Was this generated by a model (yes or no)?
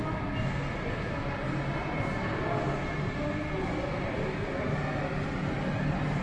no